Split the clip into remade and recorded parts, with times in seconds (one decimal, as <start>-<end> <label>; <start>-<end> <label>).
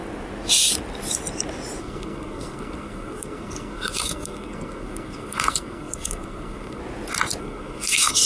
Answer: 0.0-1.8 recorded; 1.8-6.8 remade; 6.8-7.4 recorded; 7.4-8.3 remade